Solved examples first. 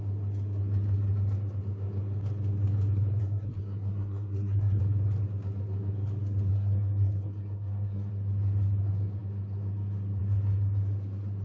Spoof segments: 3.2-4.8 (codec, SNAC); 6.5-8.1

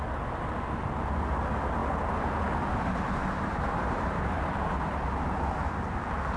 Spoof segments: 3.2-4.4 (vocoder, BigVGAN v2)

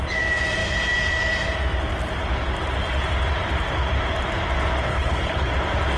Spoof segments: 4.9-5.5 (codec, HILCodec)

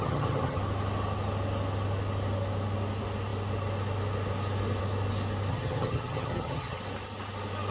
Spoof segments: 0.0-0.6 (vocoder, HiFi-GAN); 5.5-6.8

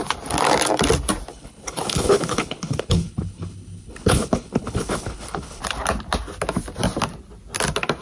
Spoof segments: 1.3-5.6 (codec, HILCodec)

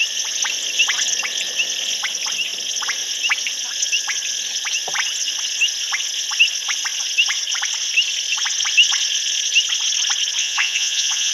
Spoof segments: 10.4-11.3 (vocoder, Vocos)